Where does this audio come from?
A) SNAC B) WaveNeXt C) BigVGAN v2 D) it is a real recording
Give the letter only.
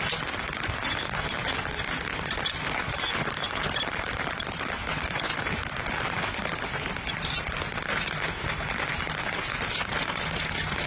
D